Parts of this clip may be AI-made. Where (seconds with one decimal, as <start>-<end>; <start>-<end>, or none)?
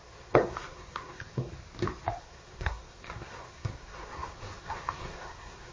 0.0-1.5; 2.2-5.7